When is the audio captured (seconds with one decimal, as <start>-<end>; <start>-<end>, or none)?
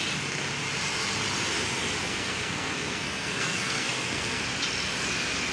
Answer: 0.0-2.0; 4.4-5.5